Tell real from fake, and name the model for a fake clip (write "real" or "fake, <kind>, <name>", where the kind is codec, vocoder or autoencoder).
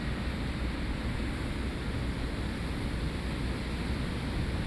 real